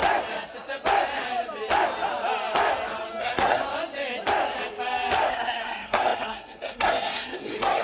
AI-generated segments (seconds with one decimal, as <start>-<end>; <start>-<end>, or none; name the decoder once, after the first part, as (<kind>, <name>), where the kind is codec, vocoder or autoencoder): 3.2-3.6 (codec, SNAC); 5.3-7.8